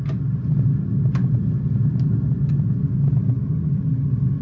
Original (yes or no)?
yes